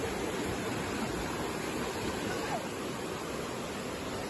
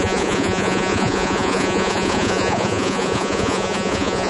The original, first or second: first